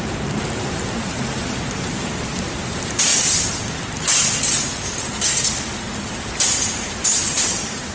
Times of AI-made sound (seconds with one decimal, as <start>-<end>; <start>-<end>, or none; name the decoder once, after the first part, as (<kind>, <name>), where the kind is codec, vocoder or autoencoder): 0.0-3.1 (vocoder, BigVGAN v2); 5.7-7.9